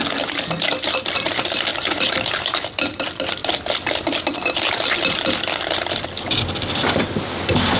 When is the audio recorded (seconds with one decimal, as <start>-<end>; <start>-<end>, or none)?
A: 0.0-7.8